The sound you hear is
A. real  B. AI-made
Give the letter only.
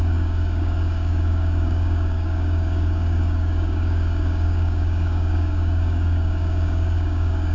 B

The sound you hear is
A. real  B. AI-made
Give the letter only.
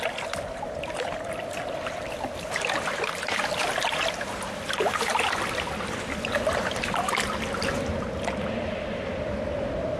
A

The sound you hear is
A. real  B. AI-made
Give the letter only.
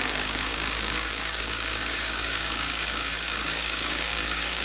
B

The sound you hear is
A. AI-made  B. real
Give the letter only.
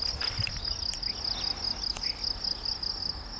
B